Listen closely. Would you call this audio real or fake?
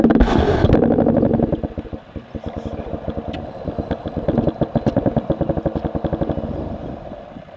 real